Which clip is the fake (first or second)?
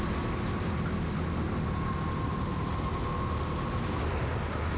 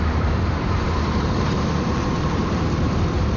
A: second